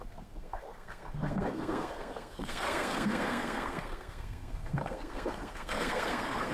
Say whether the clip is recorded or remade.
remade